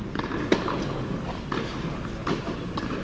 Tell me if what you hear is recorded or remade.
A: recorded